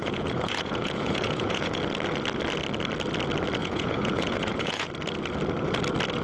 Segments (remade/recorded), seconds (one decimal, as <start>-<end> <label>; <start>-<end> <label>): 0.0-1.8 remade; 1.8-3.6 recorded; 3.6-4.9 remade; 4.9-6.2 recorded